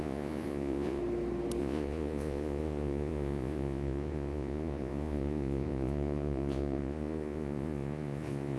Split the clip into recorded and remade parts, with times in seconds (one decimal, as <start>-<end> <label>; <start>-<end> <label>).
0.0-1.0 remade; 1.0-1.6 recorded; 1.6-8.6 remade